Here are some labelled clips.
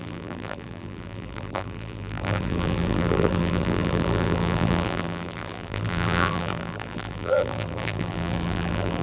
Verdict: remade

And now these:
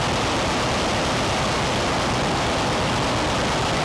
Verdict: recorded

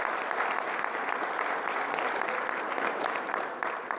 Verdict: recorded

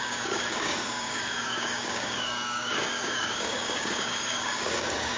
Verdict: remade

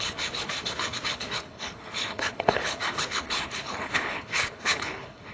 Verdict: remade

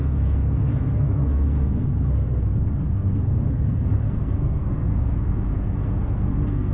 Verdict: remade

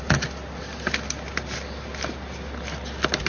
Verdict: recorded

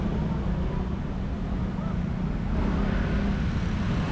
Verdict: recorded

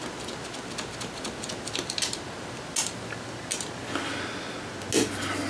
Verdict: recorded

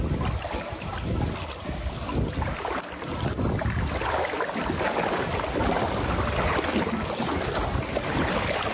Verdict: recorded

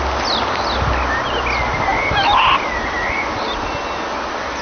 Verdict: recorded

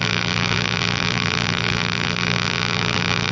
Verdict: remade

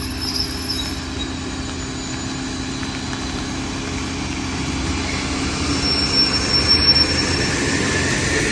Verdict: recorded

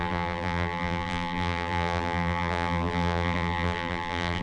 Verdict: remade